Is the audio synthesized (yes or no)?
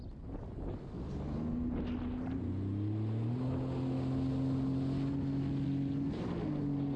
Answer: no